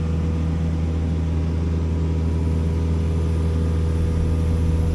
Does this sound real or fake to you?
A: real